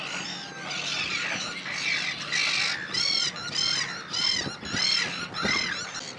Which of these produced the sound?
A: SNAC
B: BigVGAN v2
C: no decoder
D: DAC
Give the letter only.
C